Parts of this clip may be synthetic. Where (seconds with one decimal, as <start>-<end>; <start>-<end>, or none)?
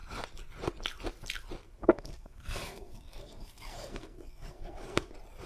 1.8-5.1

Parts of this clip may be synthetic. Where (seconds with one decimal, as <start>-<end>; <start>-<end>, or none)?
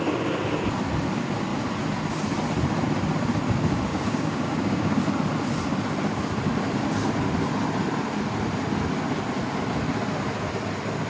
3.9-5.0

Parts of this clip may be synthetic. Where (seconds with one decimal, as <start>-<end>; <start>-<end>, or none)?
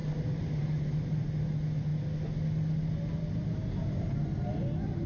0.0-1.2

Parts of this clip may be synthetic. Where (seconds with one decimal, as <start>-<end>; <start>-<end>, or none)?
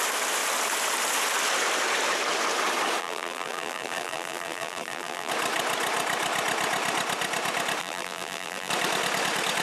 3.0-5.3; 7.8-8.7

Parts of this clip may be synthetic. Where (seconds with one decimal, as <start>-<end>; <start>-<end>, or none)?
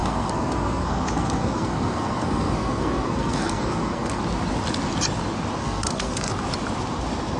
0.0-4.2; 5.6-6.3